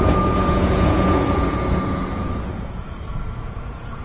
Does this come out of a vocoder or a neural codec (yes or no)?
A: yes